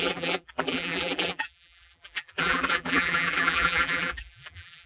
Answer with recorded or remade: remade